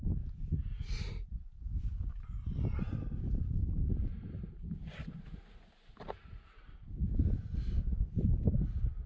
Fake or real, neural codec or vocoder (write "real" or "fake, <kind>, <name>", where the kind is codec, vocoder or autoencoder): real